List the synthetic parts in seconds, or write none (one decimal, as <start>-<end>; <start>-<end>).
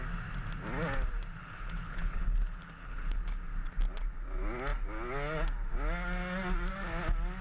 1.4-3.4